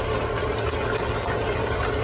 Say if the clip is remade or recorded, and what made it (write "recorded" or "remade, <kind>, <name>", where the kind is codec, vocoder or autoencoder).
recorded